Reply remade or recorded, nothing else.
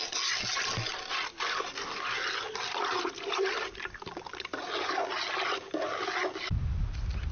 recorded